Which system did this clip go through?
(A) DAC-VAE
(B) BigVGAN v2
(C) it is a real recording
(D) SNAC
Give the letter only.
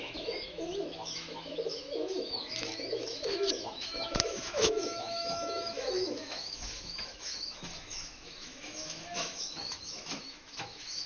A